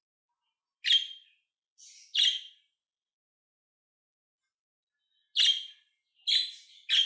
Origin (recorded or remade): recorded